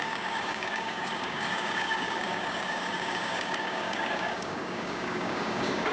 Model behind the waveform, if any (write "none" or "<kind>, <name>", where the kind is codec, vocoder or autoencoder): codec, DAC